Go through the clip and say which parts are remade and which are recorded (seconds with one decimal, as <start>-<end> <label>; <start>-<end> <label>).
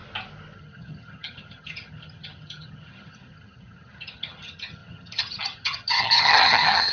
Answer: 0.0-0.6 recorded; 0.6-6.9 remade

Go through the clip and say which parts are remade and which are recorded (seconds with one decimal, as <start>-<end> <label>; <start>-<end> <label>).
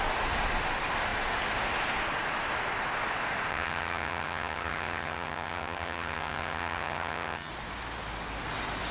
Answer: 0.0-3.5 recorded; 3.5-7.5 remade; 7.5-8.9 recorded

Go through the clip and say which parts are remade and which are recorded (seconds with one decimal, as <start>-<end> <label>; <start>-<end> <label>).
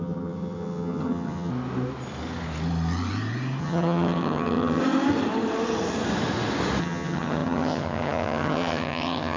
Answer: 0.0-1.5 remade; 1.5-3.6 recorded; 3.6-4.8 remade; 4.8-6.8 recorded; 6.8-9.4 remade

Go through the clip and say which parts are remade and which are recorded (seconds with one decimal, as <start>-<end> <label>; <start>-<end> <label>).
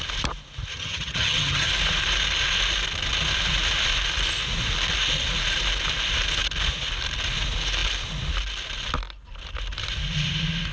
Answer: 0.0-0.7 recorded; 0.7-1.7 remade; 1.7-10.7 recorded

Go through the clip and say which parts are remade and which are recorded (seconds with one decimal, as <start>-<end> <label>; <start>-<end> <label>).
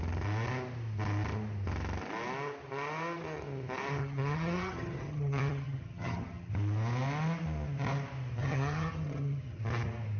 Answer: 0.0-4.0 recorded; 4.0-6.5 remade; 6.5-8.4 recorded; 8.4-9.6 remade; 9.6-10.2 recorded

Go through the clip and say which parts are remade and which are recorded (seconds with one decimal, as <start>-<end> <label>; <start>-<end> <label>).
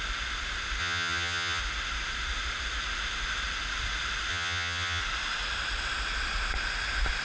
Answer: 0.0-0.8 recorded; 0.8-1.6 remade; 1.6-4.3 recorded; 4.3-5.0 remade; 5.0-7.2 recorded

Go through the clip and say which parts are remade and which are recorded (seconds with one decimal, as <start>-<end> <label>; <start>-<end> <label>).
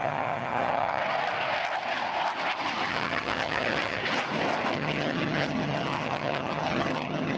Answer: 0.0-1.0 remade; 1.0-2.9 recorded; 2.9-4.0 remade; 4.0-4.7 recorded; 4.7-7.4 remade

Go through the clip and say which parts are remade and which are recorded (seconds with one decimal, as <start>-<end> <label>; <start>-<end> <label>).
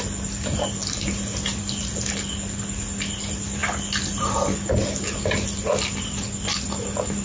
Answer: 0.0-7.2 recorded